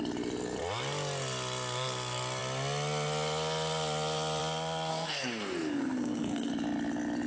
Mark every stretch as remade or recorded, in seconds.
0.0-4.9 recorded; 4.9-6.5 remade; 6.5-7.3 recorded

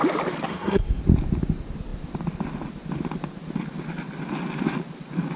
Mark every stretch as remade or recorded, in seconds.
0.0-0.5 recorded; 0.5-1.0 remade; 1.0-5.4 recorded

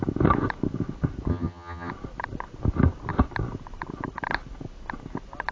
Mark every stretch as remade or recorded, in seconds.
0.0-1.3 recorded; 1.3-1.9 remade; 1.9-5.5 recorded

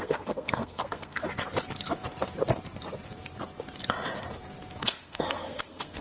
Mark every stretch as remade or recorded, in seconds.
0.0-1.2 remade; 1.2-4.8 recorded; 4.8-6.0 remade